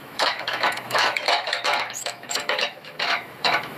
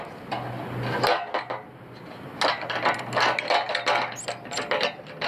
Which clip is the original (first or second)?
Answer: second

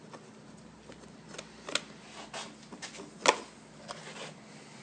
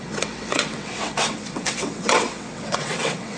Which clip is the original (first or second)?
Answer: first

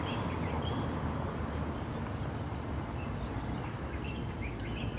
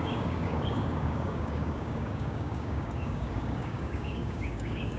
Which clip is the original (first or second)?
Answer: first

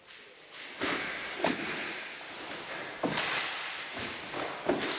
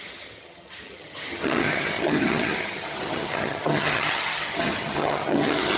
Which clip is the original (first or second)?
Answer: first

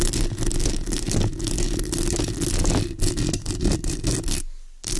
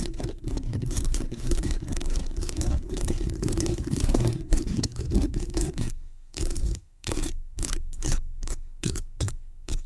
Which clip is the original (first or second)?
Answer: first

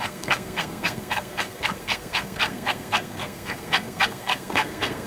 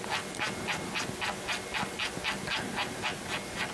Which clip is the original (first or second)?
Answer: second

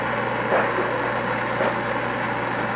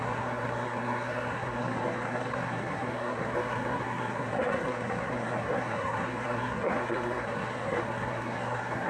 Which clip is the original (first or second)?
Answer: first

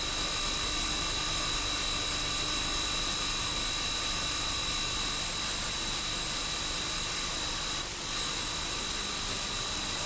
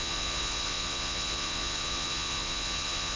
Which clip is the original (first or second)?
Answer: first